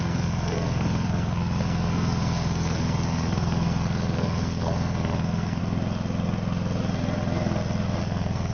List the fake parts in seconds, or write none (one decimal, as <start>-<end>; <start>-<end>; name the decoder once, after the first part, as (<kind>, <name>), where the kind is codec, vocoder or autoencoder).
0.0-5.6 (codec, SNAC); 8.0-8.5